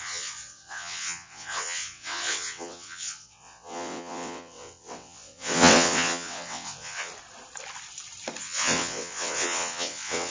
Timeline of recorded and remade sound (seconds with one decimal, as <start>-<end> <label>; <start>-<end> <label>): 0.0-7.1 remade; 7.1-8.4 recorded; 8.4-10.3 remade